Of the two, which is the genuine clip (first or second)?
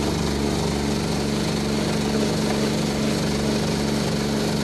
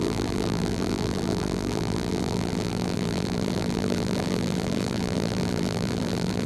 first